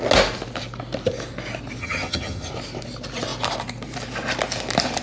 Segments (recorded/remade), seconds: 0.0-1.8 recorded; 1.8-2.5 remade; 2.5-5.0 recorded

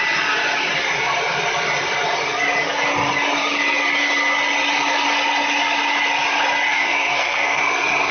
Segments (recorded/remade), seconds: 0.0-6.7 recorded; 6.7-7.6 remade; 7.6-8.1 recorded